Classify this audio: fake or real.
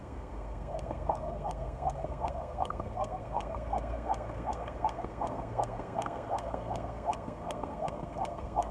fake